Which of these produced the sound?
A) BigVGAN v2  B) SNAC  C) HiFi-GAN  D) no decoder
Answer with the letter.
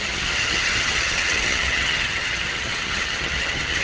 C